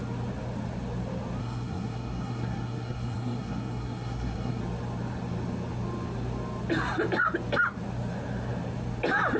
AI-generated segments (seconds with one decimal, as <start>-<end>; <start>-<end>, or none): 1.4-4.6